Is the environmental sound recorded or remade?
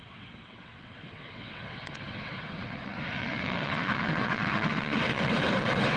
remade